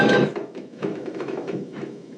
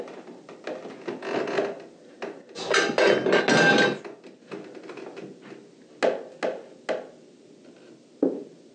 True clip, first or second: second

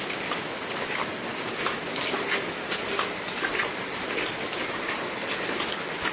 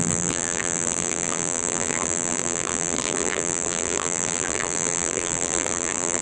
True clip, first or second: first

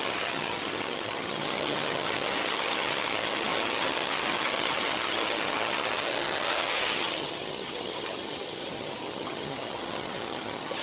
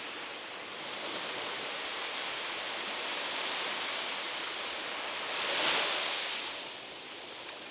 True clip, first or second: second